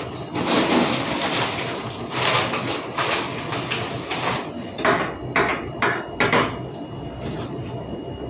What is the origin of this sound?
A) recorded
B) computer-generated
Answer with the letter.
A